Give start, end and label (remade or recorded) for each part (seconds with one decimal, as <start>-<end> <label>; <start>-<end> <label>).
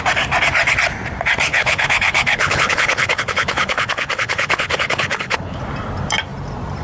0.0-1.5 recorded; 1.5-5.6 remade; 5.6-6.8 recorded